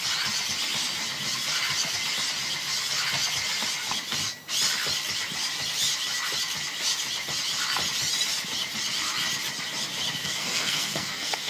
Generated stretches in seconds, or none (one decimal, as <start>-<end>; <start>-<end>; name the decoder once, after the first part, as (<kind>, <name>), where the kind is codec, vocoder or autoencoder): 10.2-11.5 (codec, SNAC)